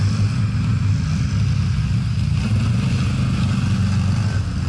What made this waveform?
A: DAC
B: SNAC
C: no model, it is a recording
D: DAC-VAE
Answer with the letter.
C